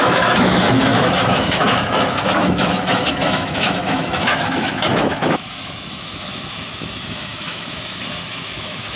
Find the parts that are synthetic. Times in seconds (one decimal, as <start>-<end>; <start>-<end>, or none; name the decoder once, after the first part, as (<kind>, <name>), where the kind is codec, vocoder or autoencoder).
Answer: 0.0-9.0 (autoencoder, DAC-VAE)